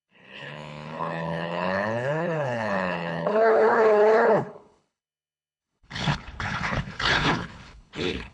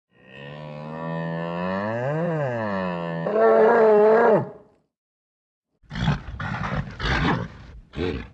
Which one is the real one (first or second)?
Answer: second